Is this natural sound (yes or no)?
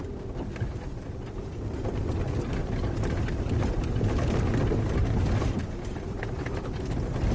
no